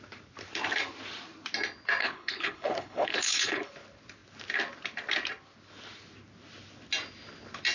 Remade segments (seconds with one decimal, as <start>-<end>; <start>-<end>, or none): 2.0-3.7